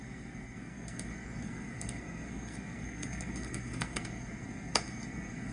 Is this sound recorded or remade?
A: remade